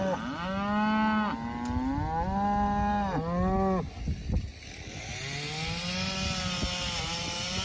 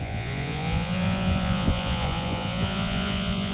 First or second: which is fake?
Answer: second